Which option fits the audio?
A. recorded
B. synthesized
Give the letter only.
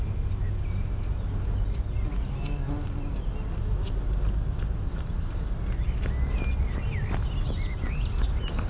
A